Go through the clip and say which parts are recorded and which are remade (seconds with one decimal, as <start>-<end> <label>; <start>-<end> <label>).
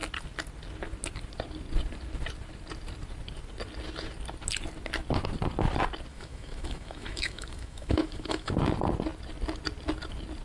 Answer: 0.0-6.1 recorded; 6.1-8.5 remade; 8.5-10.4 recorded